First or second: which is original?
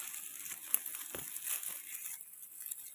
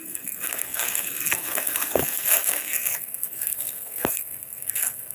first